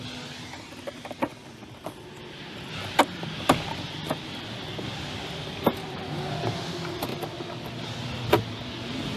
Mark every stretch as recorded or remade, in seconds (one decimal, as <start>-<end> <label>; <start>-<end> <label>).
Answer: 0.0-9.2 recorded